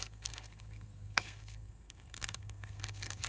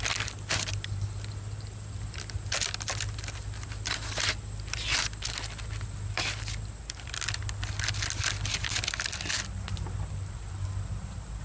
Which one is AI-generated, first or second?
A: first